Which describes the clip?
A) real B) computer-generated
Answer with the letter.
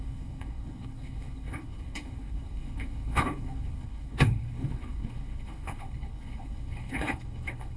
B